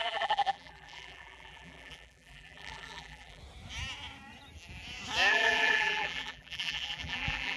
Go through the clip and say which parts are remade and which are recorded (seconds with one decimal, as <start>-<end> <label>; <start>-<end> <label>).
0.0-3.4 remade; 3.4-5.3 recorded; 5.3-7.6 remade